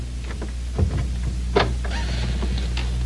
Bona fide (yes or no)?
yes